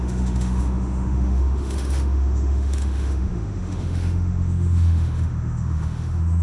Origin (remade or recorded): remade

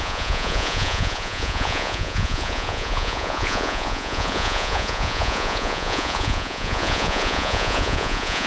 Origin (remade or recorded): remade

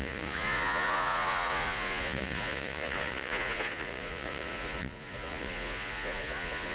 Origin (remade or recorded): remade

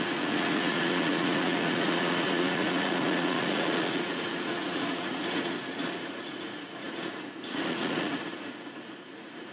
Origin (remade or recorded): remade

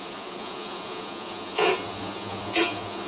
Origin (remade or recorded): remade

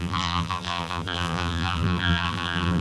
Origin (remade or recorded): remade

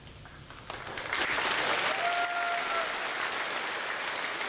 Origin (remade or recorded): recorded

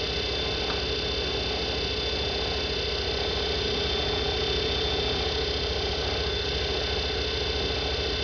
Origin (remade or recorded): recorded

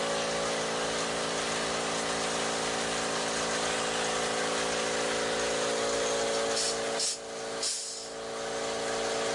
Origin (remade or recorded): recorded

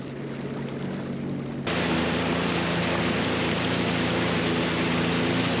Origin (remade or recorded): recorded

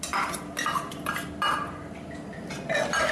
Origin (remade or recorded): recorded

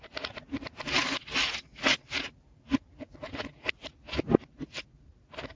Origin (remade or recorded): recorded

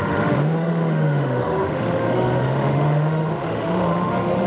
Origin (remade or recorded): remade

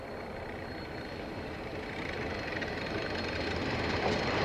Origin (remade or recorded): remade